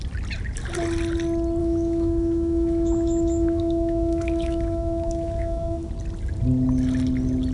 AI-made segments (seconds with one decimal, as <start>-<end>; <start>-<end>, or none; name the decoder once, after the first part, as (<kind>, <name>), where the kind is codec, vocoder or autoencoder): 1.6-5.9 (autoencoder, DAC-VAE)